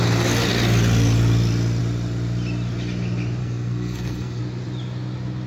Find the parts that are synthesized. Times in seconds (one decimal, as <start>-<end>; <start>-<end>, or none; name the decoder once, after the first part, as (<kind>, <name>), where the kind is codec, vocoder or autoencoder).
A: 3.4-4.4 (codec, SNAC)